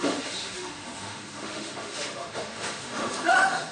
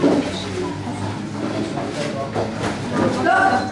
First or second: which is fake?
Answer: first